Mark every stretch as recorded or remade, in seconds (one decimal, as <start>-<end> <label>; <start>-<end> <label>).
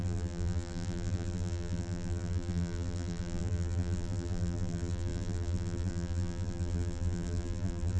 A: 0.0-8.0 remade